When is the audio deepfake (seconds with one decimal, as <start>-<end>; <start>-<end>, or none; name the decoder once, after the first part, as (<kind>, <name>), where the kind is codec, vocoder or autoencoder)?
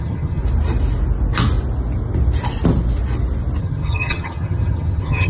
0.0-0.4 (vocoder, HiFi-GAN); 3.6-5.3